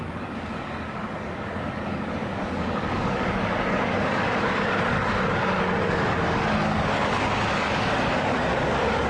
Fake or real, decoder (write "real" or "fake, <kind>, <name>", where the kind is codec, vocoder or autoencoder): fake, codec, DAC